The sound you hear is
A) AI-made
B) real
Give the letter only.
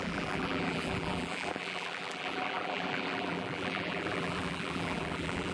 A